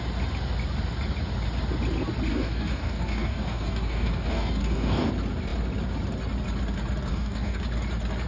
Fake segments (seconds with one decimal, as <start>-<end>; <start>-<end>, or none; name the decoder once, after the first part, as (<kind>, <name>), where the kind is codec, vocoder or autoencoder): 2.3-5.1 (codec, DAC); 7.1-7.6